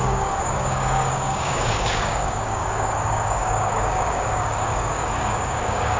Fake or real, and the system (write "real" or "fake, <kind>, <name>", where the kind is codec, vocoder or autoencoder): fake, codec, DAC